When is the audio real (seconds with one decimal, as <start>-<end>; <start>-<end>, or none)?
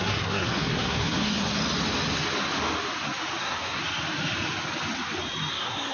1.6-3.4; 3.8-5.5